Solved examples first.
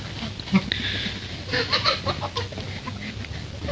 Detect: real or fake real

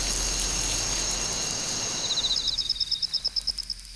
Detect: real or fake real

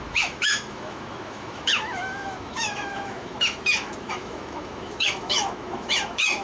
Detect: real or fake fake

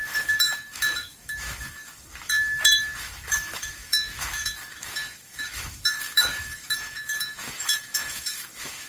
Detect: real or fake fake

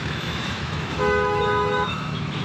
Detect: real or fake fake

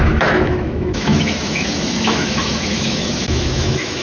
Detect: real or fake fake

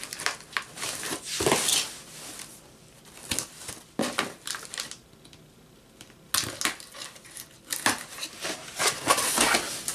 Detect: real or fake real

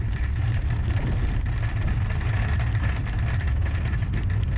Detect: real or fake real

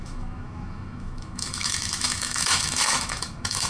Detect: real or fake fake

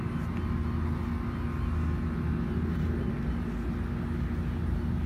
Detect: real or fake real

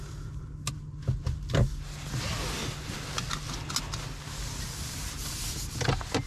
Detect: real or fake real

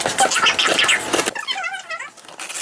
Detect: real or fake real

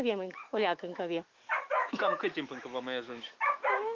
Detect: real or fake fake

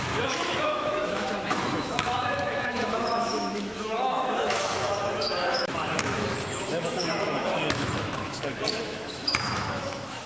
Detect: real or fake fake